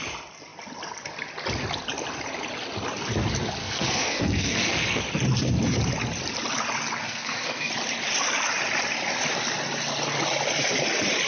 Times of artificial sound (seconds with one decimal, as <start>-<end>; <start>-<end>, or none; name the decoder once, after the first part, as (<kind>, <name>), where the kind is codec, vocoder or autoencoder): 3.6-5.0 (codec, SNAC); 7.0-7.7